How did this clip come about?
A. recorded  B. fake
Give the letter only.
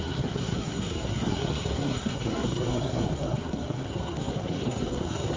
B